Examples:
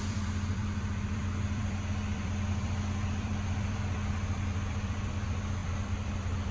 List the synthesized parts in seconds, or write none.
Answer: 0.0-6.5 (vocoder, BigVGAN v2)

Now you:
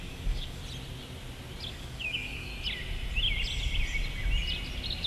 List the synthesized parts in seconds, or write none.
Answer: 0.0-0.6 (codec, DAC); 1.7-2.5

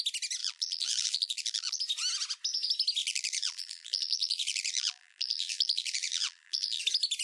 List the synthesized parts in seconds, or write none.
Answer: 0.4-1.8 (vocoder, BigVGAN v2); 3.0-6.8

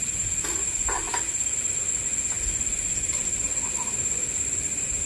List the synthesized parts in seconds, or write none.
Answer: none

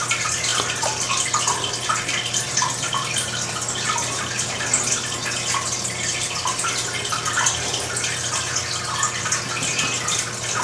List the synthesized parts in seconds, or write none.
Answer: none

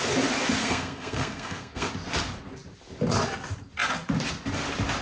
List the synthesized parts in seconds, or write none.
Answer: 0.6-1.9 (codec, SNAC)

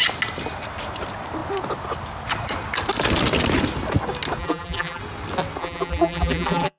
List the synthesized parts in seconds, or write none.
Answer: 4.4-5.0 (vocoder, BigVGAN v2); 5.6-6.8